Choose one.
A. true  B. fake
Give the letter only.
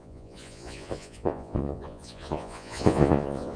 B